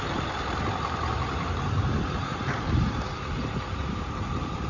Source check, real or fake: fake